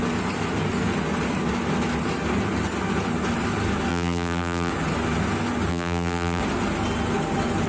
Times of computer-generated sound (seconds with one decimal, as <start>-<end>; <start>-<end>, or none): 3.9-4.7; 5.7-6.4